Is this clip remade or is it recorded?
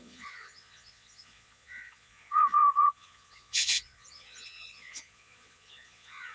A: remade